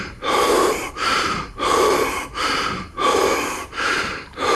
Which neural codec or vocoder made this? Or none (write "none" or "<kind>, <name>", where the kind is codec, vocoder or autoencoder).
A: vocoder, BigVGAN v2